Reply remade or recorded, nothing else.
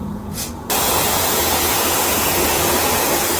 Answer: remade